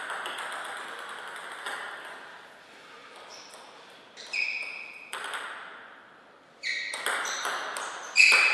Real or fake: real